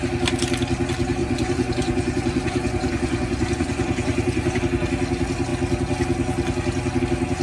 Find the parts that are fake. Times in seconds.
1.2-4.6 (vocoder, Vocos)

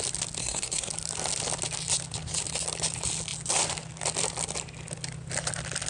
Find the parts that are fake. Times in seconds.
0.4-0.9 (codec, SNAC)

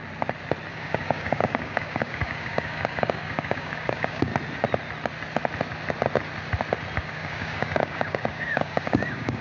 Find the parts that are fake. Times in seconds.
0.7-4.3 (codec, DAC); 7.0-9.4